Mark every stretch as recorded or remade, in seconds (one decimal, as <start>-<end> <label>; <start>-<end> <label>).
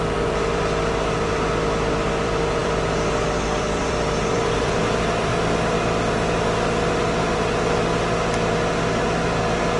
0.0-5.3 remade; 5.3-9.8 recorded